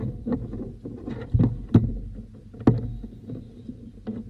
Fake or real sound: real